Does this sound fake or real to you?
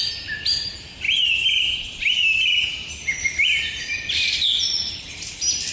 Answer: real